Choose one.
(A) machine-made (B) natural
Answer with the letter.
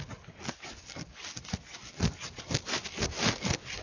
B